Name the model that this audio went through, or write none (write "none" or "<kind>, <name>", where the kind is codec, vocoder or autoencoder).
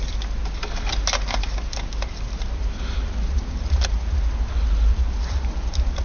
none